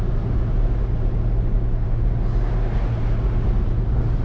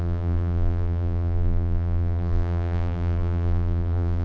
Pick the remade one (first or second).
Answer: second